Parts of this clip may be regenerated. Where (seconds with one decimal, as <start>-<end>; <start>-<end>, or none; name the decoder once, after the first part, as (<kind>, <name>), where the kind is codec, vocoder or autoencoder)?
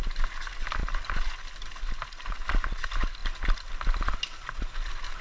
none